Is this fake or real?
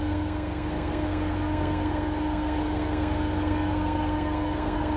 fake